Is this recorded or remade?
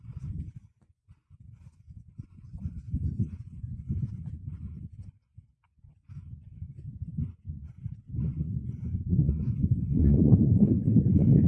remade